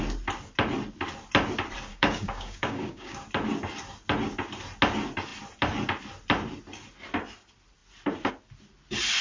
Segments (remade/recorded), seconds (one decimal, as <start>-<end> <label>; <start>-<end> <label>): 0.0-1.9 recorded; 1.9-3.2 remade; 3.2-9.2 recorded